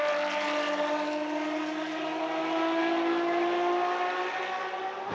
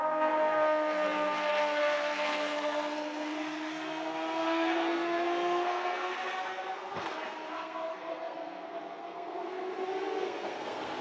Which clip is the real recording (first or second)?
first